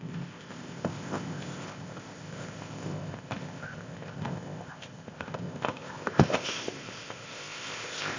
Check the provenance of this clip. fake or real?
fake